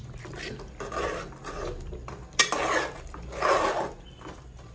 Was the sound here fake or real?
real